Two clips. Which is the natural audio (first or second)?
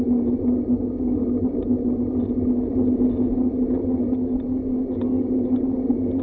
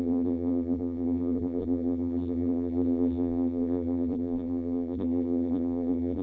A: first